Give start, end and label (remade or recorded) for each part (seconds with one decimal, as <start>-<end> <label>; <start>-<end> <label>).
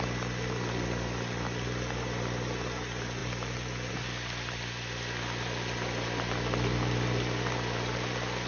0.0-8.5 recorded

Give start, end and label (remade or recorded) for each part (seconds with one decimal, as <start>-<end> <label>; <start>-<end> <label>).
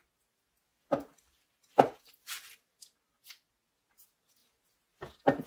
0.0-0.7 recorded; 0.7-3.5 remade; 3.5-5.5 recorded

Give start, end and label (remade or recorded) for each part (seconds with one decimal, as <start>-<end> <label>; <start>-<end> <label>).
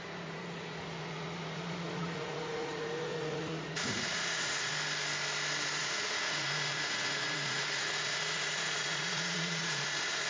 0.0-4.7 remade; 4.7-5.8 recorded; 5.8-10.3 remade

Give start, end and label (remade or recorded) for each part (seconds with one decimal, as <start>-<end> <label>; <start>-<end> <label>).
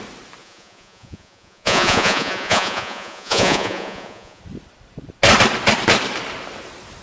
0.0-0.4 recorded; 0.4-4.4 remade; 4.4-7.0 recorded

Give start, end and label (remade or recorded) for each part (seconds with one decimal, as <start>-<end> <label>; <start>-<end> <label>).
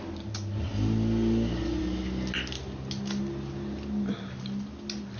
0.0-5.2 recorded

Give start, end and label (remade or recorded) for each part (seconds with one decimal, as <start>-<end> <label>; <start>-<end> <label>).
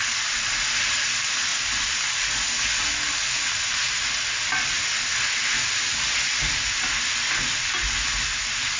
0.0-8.8 recorded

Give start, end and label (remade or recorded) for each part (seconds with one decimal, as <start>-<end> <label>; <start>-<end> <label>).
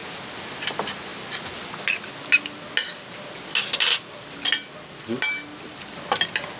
0.0-6.6 recorded